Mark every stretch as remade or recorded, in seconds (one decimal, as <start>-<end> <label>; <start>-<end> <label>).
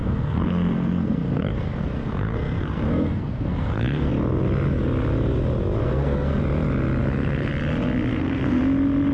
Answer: 0.0-4.1 remade; 4.1-5.8 recorded; 5.8-6.4 remade; 6.4-7.0 recorded; 7.0-7.5 remade; 7.5-8.1 recorded; 8.1-8.6 remade; 8.6-9.1 recorded